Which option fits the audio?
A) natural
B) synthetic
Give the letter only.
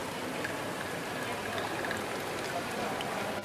A